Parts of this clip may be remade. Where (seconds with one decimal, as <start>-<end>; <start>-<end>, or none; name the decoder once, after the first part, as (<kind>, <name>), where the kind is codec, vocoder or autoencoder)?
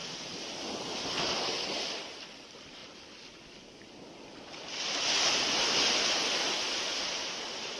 0.0-0.7 (vocoder, BigVGAN v2)